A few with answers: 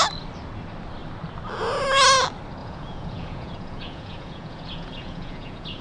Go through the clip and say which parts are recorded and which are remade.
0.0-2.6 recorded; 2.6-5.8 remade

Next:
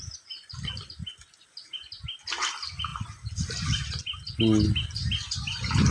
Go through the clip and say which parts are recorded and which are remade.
0.0-5.9 recorded

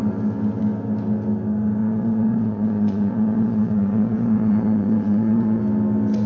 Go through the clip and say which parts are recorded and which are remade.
0.0-1.8 recorded; 1.8-5.6 remade; 5.6-6.3 recorded

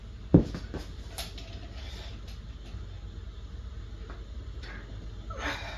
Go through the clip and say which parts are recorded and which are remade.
0.0-5.8 recorded